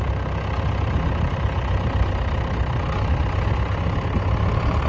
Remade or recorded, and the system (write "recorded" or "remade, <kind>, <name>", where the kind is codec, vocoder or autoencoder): recorded